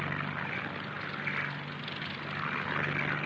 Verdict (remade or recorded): recorded